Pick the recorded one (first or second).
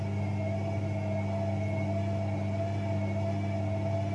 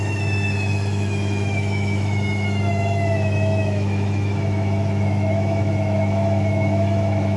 first